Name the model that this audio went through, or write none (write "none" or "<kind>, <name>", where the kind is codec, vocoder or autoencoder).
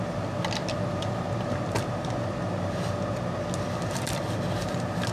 none